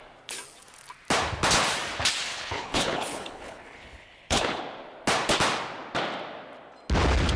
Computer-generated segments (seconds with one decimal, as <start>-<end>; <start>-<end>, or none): 2.3-4.6